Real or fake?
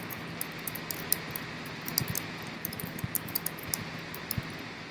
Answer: real